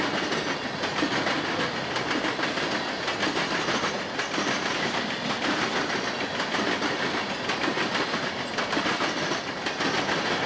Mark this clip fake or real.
real